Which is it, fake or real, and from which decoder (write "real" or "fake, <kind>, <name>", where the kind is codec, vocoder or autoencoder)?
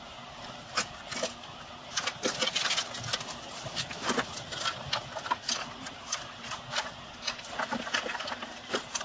real